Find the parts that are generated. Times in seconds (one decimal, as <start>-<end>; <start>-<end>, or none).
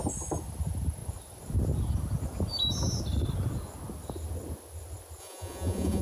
5.2-6.0